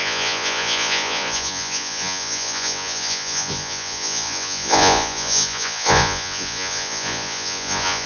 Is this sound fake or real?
fake